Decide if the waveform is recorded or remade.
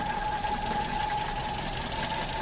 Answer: recorded